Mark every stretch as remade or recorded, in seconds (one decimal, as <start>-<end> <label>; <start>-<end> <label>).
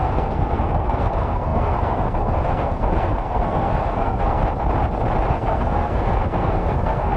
0.0-4.4 remade; 4.4-5.3 recorded; 5.3-7.2 remade